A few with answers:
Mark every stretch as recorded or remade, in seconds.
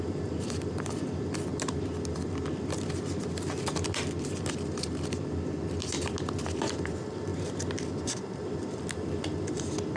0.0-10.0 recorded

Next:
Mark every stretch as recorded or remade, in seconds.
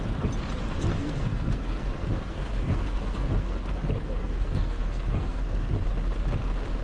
0.0-0.9 recorded; 0.9-3.6 remade; 3.6-4.2 recorded; 4.2-5.7 remade; 5.7-6.8 recorded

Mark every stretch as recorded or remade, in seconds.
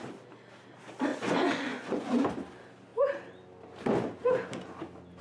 0.0-1.1 recorded; 1.1-2.3 remade; 2.3-5.2 recorded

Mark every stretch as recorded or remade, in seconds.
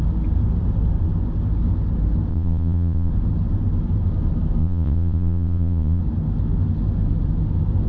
0.0-2.3 recorded; 2.3-3.1 remade; 3.1-4.6 recorded; 4.6-6.0 remade; 6.0-7.9 recorded